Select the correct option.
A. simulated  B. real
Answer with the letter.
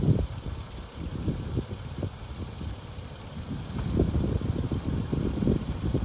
A